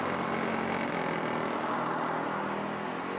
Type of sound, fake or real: real